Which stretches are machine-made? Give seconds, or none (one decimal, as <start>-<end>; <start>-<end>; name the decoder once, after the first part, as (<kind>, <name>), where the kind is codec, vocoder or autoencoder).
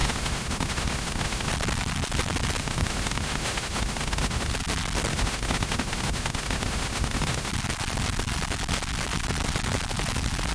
0.0-1.5 (autoencoder, DAC-VAE); 2.6-4.5; 5.1-7.5